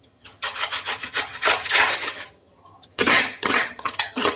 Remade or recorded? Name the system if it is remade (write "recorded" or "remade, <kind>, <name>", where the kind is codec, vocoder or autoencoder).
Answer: remade, vocoder, HiFi-GAN